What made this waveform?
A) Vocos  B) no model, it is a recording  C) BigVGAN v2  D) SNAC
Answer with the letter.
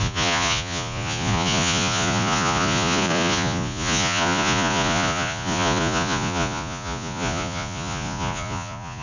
A